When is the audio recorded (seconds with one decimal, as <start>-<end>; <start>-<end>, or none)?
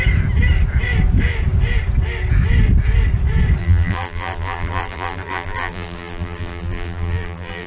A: 0.0-3.6